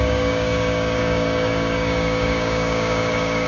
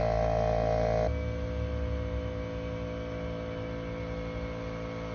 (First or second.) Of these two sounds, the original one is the second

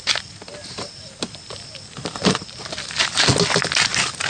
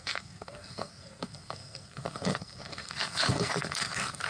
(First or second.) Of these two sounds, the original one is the first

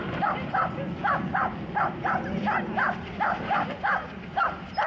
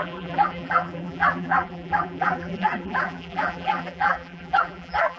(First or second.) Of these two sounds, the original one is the first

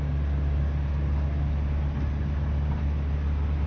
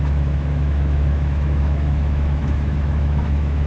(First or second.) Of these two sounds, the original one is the first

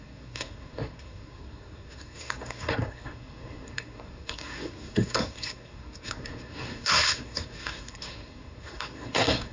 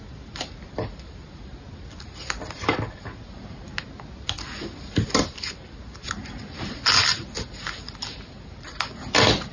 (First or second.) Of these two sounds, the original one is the second